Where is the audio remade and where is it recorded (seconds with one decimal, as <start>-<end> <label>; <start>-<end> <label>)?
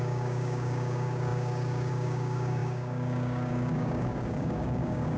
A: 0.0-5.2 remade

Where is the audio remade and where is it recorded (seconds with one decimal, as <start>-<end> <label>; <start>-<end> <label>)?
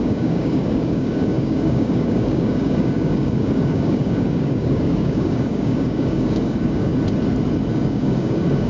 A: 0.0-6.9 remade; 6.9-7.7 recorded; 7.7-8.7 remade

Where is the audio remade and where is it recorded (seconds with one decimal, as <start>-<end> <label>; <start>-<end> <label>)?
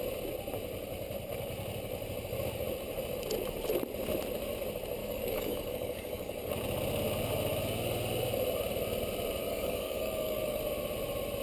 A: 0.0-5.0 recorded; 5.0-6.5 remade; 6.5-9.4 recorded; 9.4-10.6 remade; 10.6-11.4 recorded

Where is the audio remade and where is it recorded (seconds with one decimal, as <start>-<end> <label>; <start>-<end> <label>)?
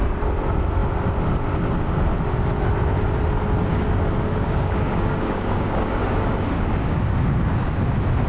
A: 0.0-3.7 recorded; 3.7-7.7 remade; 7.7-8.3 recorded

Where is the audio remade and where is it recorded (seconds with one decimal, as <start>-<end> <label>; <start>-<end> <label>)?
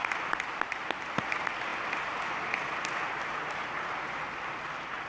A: 0.0-5.1 recorded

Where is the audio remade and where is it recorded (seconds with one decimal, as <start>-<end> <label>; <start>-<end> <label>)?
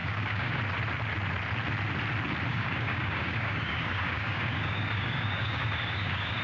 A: 0.0-0.6 remade; 0.6-2.5 recorded; 2.5-6.4 remade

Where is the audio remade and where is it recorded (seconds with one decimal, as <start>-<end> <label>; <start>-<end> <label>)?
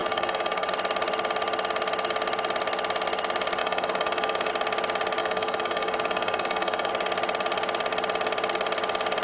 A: 0.0-0.7 remade; 0.7-3.6 recorded; 3.6-4.5 remade; 4.5-5.2 recorded; 5.2-6.9 remade; 6.9-9.2 recorded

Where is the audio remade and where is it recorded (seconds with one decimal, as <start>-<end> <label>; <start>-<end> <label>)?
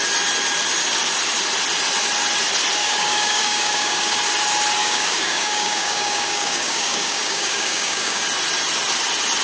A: 0.0-2.8 recorded; 2.8-4.2 remade; 4.2-4.8 recorded; 4.8-8.2 remade; 8.2-9.4 recorded